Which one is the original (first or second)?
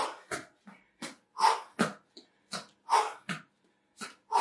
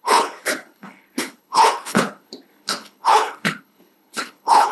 first